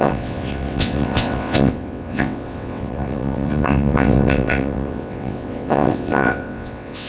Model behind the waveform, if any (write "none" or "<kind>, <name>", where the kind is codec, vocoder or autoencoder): vocoder, WaveNeXt